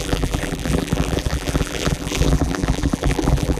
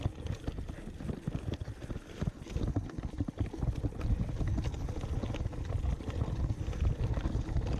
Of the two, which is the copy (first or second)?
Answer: first